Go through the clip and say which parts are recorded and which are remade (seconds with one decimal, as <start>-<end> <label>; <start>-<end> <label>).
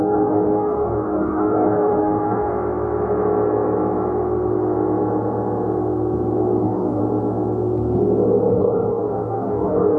0.0-2.5 remade; 2.5-6.6 recorded; 6.6-7.0 remade; 7.0-8.5 recorded; 8.5-10.0 remade